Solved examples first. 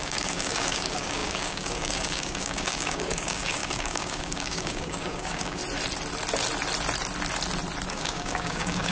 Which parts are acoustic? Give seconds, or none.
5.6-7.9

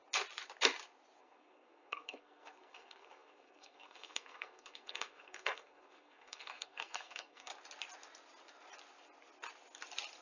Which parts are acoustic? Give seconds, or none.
0.0-1.2; 7.5-10.2

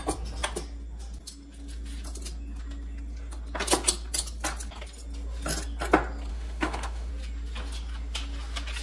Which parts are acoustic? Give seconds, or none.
0.0-6.3; 7.1-8.8

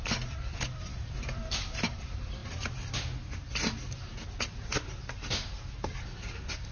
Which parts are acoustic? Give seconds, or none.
2.4-6.7

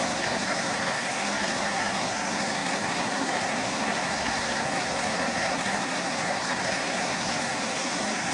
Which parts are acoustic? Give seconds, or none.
none

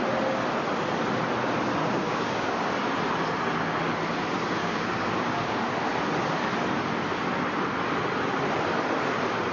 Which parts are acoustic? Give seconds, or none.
0.0-1.8; 2.7-4.6; 5.7-9.5